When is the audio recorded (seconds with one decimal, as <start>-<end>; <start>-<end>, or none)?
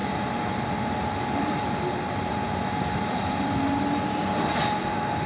0.0-5.3